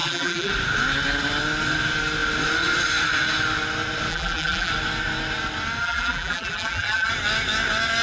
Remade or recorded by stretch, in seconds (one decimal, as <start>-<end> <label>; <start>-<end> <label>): 0.0-0.5 remade; 0.5-4.1 recorded; 4.1-4.7 remade; 4.7-5.8 recorded; 5.8-7.1 remade; 7.1-8.0 recorded